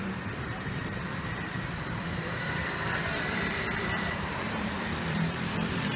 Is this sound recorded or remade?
remade